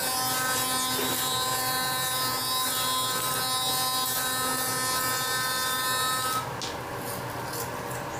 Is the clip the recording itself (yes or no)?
yes